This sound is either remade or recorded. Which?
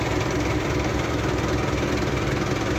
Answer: recorded